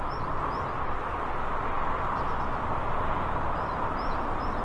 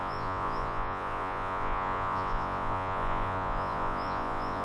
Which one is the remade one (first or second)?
second